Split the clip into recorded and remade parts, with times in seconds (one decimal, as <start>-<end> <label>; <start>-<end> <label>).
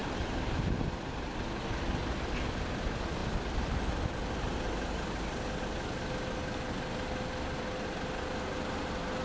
0.0-9.2 recorded